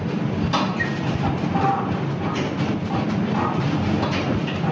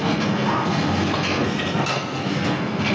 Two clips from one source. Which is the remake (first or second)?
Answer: second